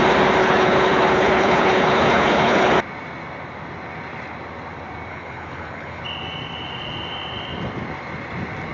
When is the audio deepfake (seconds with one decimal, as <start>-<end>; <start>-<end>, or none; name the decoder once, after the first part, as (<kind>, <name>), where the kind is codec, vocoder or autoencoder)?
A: 0.4-2.7 (codec, HILCodec); 5.1-6.0

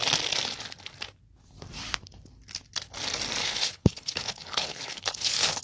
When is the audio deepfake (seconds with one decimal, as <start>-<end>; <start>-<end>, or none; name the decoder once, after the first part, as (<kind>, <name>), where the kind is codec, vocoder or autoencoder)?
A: 3.4-5.6 (codec, HILCodec)

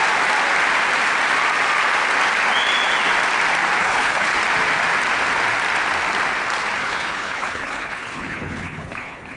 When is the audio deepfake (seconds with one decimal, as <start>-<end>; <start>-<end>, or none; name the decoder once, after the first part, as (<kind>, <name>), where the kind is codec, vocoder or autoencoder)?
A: 3.8-4.3 (codec, HILCodec); 6.8-9.4

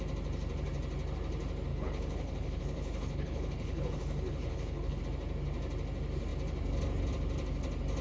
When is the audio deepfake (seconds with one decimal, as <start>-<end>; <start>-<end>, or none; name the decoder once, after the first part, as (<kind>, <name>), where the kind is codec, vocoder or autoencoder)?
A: 1.7-5.0 (codec, HILCodec)

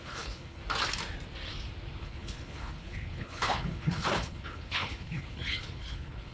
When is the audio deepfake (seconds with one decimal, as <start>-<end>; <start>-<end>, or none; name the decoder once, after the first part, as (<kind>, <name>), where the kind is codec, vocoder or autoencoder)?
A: 0.0-0.6 (codec, HILCodec); 2.0-6.3

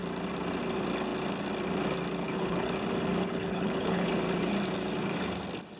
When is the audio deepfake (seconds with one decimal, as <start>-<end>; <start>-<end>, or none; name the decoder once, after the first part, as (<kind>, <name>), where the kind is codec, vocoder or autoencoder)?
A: 2.2-2.7 (codec, HILCodec); 3.2-4.1